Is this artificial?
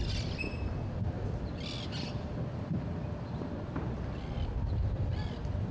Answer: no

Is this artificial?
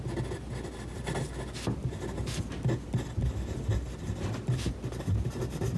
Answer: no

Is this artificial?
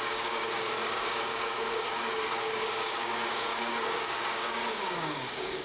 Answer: yes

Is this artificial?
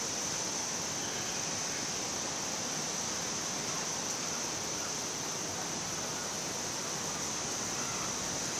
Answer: no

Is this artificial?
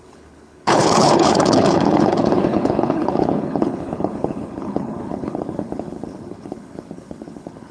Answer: yes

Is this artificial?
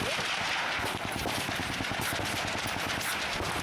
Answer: no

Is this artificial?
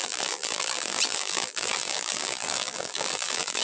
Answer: yes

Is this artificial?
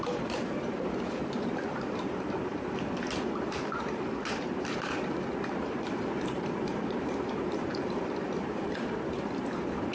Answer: yes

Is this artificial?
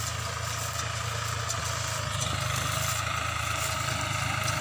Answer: no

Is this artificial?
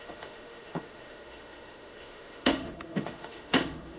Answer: yes